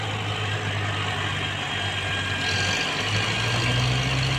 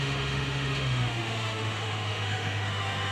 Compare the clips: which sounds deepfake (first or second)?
second